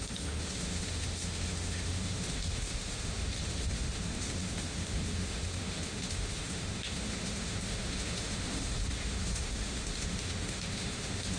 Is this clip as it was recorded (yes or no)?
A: no